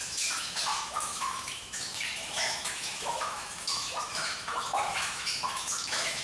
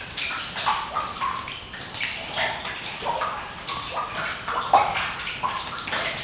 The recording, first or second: second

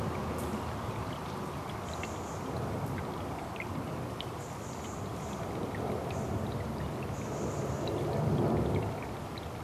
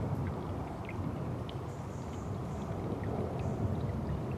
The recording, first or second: first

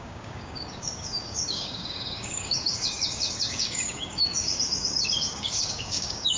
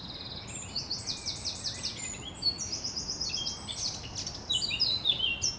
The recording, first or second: second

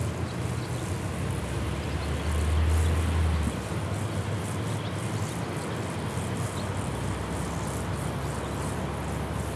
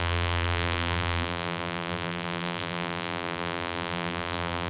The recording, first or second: first